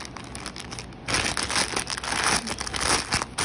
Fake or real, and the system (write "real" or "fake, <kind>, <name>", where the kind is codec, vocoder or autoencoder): real